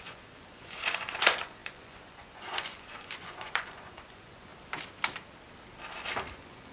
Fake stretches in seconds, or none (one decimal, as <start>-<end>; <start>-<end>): 0.0-4.5; 6.3-6.7